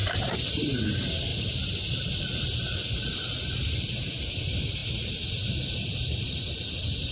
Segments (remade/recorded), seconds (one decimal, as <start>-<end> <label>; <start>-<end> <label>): 0.0-0.8 remade; 0.8-1.3 recorded; 1.3-2.2 remade; 2.2-7.1 recorded